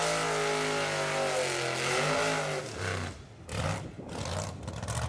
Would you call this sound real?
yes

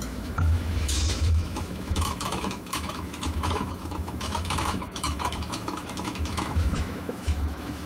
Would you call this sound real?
no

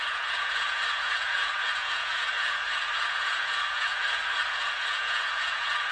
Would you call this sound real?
no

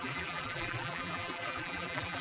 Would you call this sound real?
no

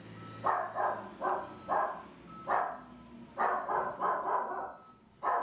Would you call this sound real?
yes